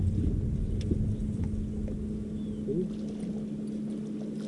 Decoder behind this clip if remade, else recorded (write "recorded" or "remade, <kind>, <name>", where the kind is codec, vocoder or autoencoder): recorded